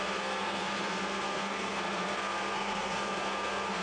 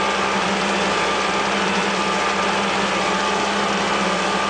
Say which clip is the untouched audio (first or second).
second